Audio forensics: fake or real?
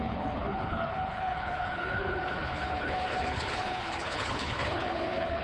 fake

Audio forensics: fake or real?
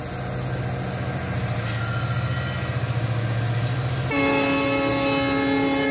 real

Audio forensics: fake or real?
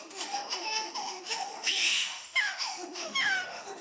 fake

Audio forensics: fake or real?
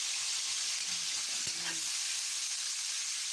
real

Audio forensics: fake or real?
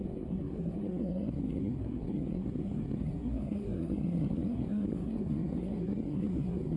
fake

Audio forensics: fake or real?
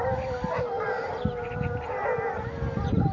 real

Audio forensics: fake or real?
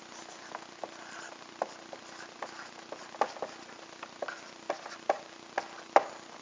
real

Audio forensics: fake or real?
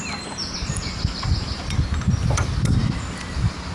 real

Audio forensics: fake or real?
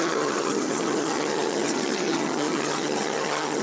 fake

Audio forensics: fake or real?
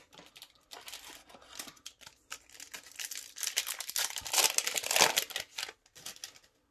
real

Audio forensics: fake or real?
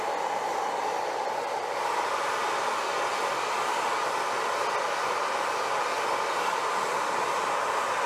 real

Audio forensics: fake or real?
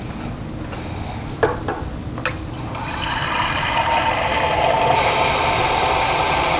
real